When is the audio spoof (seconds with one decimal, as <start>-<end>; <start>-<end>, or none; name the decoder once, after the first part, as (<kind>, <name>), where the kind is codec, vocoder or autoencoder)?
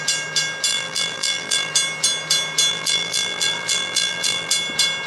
0.7-1.7 (vocoder, BigVGAN v2); 2.7-4.5